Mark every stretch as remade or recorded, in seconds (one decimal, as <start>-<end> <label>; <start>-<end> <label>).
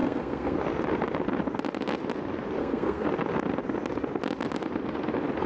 0.0-0.6 remade; 0.6-2.6 recorded; 2.6-3.1 remade; 3.1-5.5 recorded